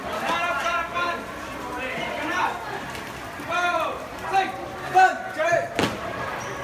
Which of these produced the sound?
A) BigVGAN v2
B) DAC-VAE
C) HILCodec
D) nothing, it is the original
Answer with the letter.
D